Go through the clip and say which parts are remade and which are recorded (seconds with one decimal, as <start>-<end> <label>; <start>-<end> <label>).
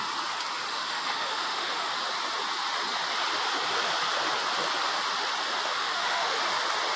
0.0-0.7 recorded; 0.7-1.9 remade; 1.9-5.8 recorded; 5.8-6.4 remade; 6.4-7.0 recorded